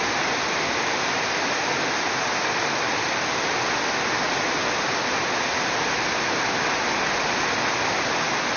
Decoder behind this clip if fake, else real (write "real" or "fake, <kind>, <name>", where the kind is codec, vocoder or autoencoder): real